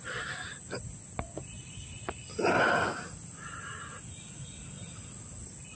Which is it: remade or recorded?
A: recorded